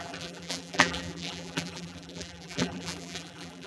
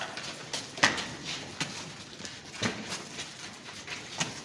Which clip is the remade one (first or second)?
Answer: first